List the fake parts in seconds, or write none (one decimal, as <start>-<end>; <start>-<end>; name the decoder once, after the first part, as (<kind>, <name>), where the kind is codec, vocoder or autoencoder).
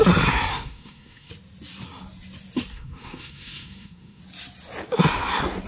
0.5-1.3 (codec, SNAC); 2.7-4.2